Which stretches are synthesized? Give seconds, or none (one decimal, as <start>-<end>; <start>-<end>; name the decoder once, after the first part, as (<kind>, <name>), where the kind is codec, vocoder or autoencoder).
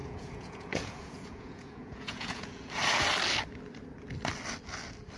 0.0-2.7 (vocoder, Vocos)